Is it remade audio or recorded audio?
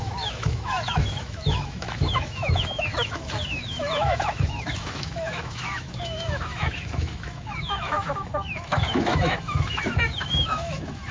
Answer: remade